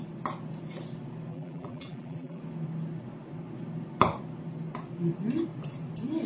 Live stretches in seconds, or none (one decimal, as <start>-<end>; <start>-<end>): 0.0-1.3; 2.4-6.3